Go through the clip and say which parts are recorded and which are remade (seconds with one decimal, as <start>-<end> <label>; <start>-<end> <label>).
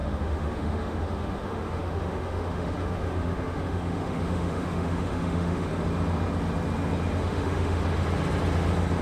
0.0-5.7 remade; 5.7-7.2 recorded; 7.2-7.8 remade; 7.8-9.0 recorded